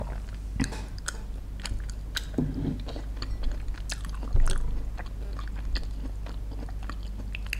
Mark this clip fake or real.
real